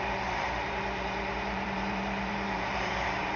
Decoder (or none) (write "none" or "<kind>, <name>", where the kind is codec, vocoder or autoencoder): vocoder, BigVGAN v2